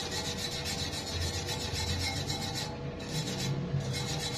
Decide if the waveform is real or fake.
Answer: real